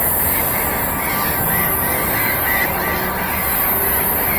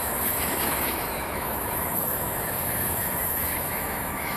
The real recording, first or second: first